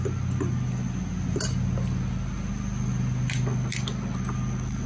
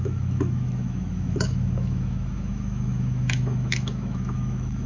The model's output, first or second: second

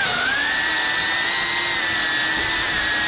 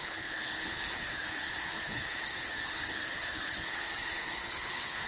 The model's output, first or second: second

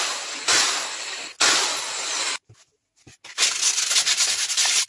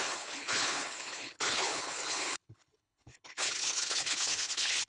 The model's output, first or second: second